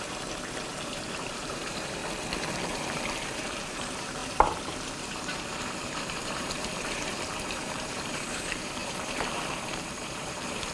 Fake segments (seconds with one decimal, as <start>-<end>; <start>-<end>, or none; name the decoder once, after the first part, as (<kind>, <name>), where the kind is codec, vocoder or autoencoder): 0.0-2.0 (vocoder, BigVGAN v2); 2.7-10.7